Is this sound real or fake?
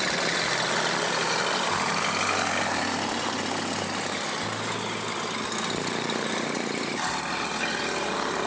real